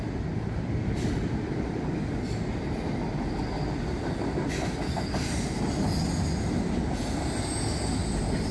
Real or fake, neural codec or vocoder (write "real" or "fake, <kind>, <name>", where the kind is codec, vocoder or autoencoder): real